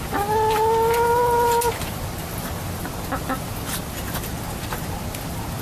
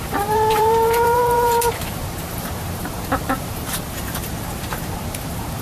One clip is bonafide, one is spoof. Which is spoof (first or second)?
second